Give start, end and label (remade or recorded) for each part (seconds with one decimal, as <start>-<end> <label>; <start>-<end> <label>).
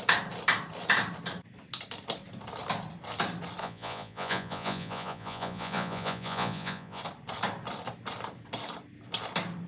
0.0-3.6 recorded; 3.6-7.0 remade; 7.0-9.7 recorded